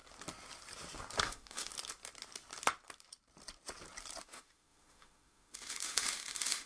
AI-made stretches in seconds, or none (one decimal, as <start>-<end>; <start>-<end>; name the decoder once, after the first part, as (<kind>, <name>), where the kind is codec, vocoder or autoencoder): 1.2-1.7 (autoencoder, DAC-VAE); 4.2-6.7